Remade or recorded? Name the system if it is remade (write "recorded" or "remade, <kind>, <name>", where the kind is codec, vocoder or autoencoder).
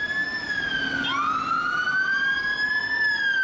recorded